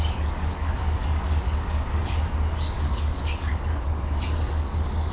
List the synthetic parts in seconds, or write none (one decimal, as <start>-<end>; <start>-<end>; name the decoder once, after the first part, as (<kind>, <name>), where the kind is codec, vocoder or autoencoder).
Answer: 0.0-5.1 (codec, DAC)